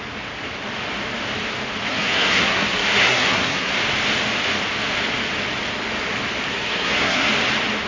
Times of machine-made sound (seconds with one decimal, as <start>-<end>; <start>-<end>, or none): 1.9-3.7; 6.5-7.3